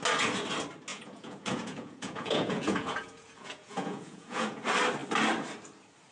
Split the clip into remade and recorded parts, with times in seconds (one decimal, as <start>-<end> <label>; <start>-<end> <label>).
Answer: 0.0-0.9 recorded; 0.9-4.6 remade; 4.6-6.1 recorded

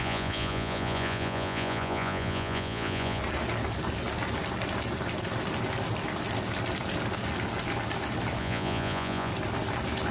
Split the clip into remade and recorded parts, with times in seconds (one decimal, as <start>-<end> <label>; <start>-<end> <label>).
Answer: 0.0-3.2 remade; 3.2-8.4 recorded; 8.4-9.3 remade; 9.3-10.1 recorded